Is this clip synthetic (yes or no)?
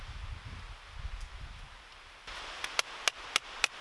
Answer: no